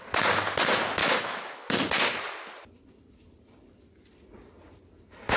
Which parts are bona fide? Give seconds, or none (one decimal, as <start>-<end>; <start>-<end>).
0.0-1.0; 1.6-5.4